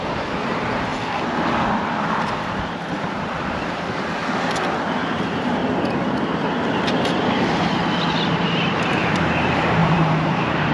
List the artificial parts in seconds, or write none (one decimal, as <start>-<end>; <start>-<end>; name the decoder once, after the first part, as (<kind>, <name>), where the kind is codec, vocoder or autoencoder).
0.0-0.9 (vocoder, BigVGAN v2); 2.2-4.2; 5.1-5.6; 8.3-10.7